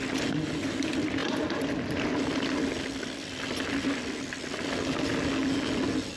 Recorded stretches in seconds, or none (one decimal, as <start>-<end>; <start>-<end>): 0.0-6.2